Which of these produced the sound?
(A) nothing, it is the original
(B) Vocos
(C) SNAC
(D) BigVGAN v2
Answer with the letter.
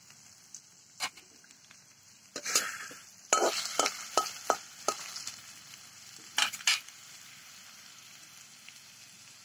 A